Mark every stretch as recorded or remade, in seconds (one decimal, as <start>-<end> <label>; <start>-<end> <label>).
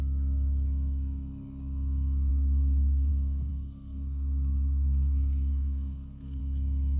0.0-2.3 recorded; 2.3-3.1 remade; 3.1-3.5 recorded; 3.5-6.4 remade; 6.4-7.0 recorded